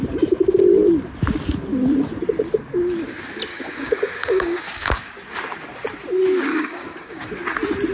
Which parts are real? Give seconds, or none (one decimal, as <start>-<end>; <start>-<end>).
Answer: 0.0-3.5; 5.1-6.5; 7.3-7.9